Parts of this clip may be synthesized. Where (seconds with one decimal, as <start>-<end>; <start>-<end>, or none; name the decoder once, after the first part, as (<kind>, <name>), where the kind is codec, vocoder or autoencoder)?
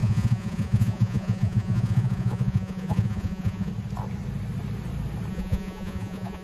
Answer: 0.0-3.7 (vocoder, Vocos); 5.3-6.4